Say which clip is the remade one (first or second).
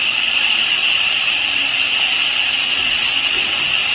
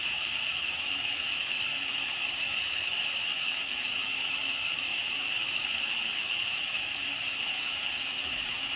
second